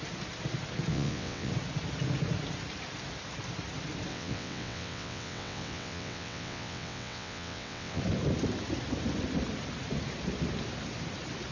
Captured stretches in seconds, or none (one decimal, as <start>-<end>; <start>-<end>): 0.0-0.9; 1.5-4.1; 8.0-11.5